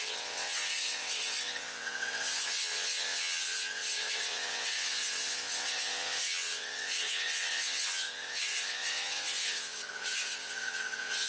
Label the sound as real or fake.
fake